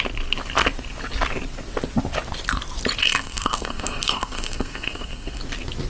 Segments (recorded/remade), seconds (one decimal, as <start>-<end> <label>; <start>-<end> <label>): 0.0-3.0 recorded; 3.0-5.4 remade; 5.4-5.9 recorded